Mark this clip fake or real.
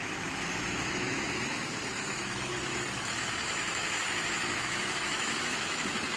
fake